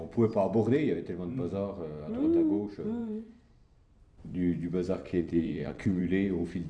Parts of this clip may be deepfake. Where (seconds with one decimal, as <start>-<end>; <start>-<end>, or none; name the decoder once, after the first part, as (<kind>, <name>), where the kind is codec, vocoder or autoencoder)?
3.0-4.0 (vocoder, Vocos); 5.0-6.0